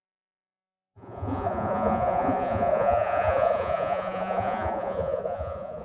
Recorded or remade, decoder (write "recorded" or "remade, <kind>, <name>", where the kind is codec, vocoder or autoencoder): remade, vocoder, Vocos